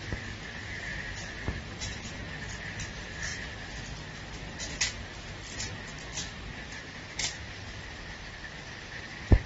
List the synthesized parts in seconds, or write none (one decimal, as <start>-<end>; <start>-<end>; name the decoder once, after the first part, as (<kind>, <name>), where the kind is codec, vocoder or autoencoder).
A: none